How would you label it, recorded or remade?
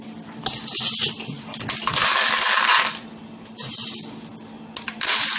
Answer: recorded